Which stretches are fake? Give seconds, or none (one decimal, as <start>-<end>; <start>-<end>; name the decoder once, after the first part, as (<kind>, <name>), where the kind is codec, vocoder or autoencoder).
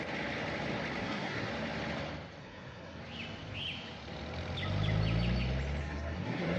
1.0-1.5 (codec, SNAC); 2.4-3.0; 5.8-6.6